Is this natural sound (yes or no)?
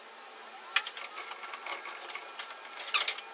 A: yes